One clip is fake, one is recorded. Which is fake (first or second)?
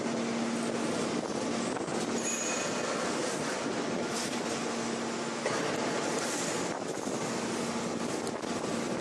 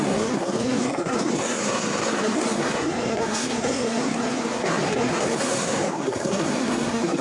second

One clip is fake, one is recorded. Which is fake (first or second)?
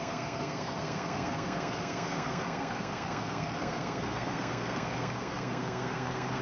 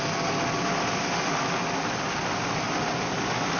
first